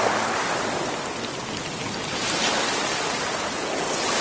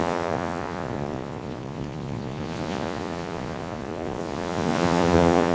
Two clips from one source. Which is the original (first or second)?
first